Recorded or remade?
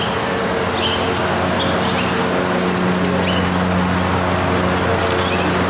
recorded